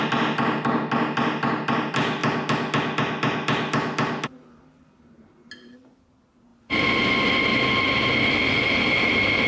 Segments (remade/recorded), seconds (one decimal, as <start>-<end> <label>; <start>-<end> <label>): 0.0-9.5 recorded